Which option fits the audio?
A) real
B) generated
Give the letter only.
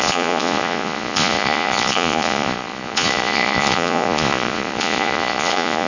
B